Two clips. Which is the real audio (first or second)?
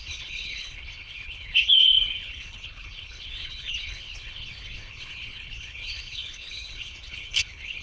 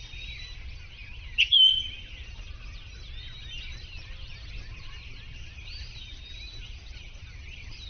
second